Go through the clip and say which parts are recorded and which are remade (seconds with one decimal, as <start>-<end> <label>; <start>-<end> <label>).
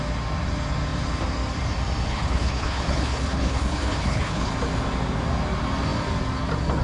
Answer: 0.0-2.1 recorded; 2.1-4.5 remade; 4.5-6.8 recorded